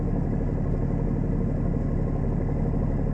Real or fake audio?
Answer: real